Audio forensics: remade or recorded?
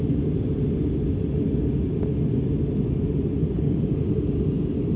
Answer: recorded